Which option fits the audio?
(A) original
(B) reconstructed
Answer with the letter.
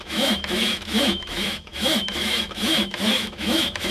B